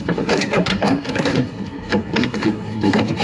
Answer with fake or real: fake